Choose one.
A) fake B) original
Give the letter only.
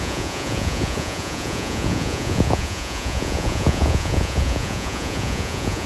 A